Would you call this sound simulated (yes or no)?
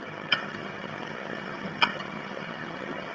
yes